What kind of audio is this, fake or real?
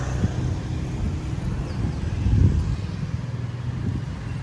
real